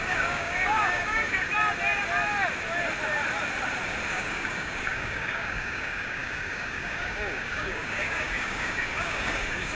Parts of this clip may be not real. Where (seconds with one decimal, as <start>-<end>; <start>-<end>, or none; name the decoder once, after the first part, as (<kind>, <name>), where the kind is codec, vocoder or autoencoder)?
0.0-1.5 (codec, DAC); 4.1-9.7